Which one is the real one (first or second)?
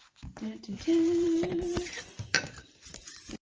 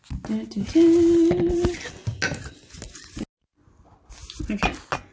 second